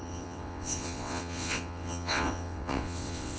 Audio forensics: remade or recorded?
remade